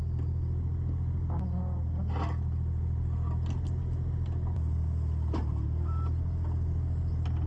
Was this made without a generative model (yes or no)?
yes